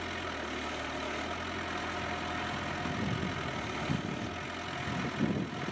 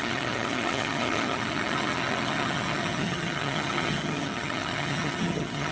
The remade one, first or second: second